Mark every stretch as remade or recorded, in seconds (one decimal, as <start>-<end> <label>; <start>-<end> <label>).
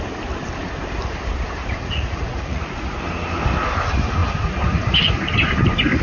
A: 0.0-1.6 recorded; 1.6-3.0 remade; 3.0-6.0 recorded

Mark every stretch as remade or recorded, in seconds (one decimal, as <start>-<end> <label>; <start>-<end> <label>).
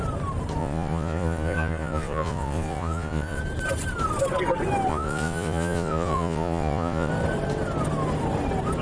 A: 0.0-0.6 recorded; 0.6-3.4 remade; 3.4-4.9 recorded; 4.9-7.1 remade; 7.1-8.8 recorded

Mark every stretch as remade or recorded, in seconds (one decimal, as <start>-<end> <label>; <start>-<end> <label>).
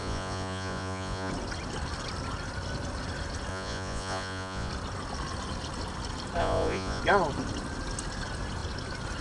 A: 0.0-1.3 remade; 1.3-3.5 recorded; 3.5-4.7 remade; 4.7-6.4 recorded; 6.4-7.0 remade; 7.0-9.2 recorded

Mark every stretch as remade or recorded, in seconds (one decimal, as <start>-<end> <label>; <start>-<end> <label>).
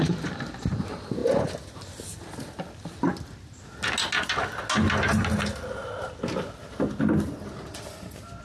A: 0.0-8.4 recorded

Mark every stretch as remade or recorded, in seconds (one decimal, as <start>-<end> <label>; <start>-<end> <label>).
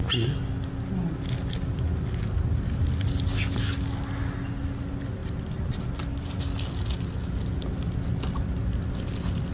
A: 0.0-9.5 recorded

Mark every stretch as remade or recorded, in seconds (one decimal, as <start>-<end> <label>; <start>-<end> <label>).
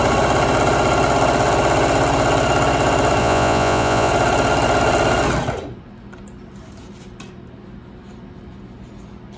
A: 0.0-3.2 recorded; 3.2-4.1 remade; 4.1-9.4 recorded